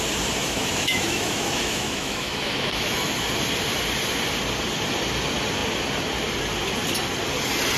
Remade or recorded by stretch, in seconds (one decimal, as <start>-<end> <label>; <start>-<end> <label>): 0.0-0.4 recorded; 0.4-3.1 remade; 3.1-7.8 recorded